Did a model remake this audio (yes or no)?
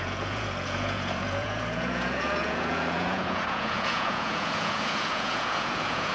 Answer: yes